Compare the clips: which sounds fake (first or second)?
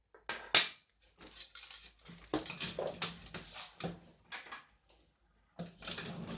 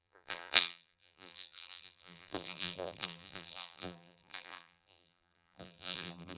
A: second